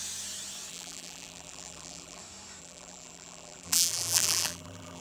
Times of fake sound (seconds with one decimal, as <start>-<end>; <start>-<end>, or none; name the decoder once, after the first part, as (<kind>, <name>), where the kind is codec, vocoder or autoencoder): 0.7-2.2 (vocoder, BigVGAN v2); 2.6-5.0